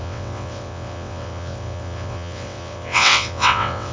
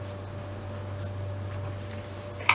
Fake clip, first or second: first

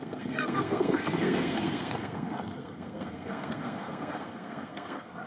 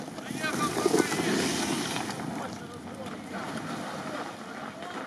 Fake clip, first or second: first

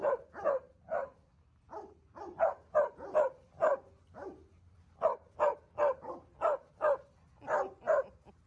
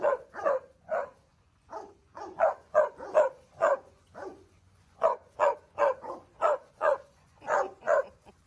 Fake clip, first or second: second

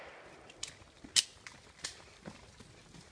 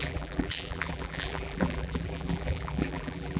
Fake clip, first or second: second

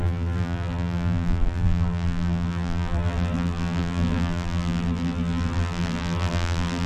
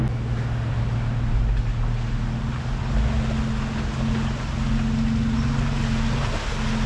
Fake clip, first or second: first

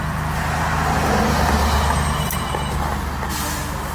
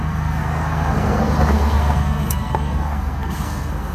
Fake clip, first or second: second